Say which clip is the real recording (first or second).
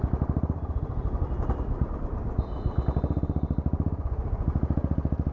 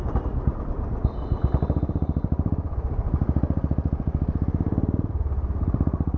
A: first